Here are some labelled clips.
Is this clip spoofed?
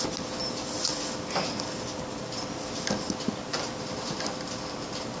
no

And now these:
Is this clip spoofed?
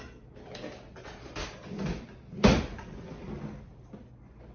no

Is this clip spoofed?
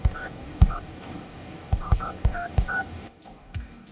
yes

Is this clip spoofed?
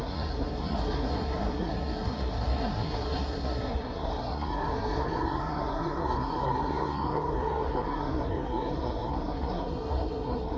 yes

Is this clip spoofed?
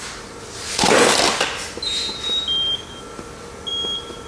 no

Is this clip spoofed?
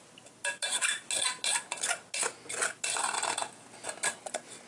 no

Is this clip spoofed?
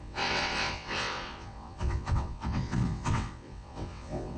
yes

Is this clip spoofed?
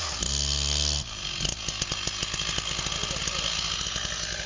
no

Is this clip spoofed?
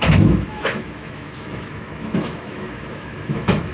yes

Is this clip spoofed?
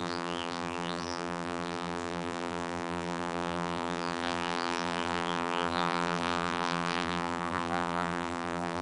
yes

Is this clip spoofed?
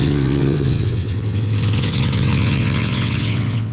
yes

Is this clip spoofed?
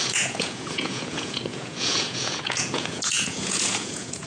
yes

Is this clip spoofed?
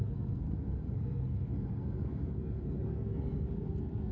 yes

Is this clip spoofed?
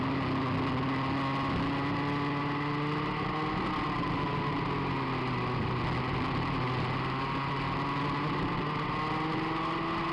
no